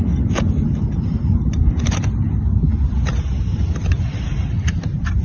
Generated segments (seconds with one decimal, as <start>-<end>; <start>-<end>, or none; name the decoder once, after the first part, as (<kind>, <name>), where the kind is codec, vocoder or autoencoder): none